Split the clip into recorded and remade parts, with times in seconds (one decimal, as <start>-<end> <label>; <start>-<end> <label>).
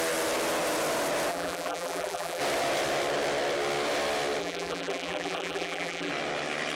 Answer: 0.0-1.3 recorded; 1.3-2.4 remade; 2.4-4.4 recorded; 4.4-6.1 remade; 6.1-6.8 recorded